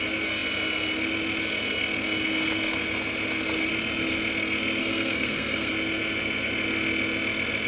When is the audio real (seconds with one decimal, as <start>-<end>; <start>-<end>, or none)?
0.0-4.8; 5.7-7.7